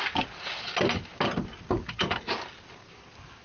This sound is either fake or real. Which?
real